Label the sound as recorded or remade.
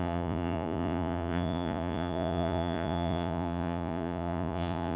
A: remade